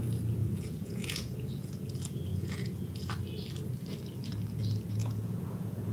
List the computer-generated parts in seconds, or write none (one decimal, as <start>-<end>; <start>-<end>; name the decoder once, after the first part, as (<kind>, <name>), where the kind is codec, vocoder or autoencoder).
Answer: 0.4-1.9 (vocoder, Vocos); 2.3-3.1; 5.0-5.9